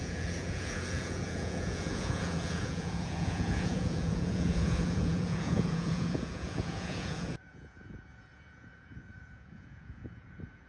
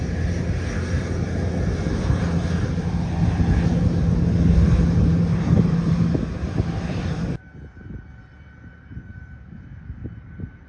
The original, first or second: second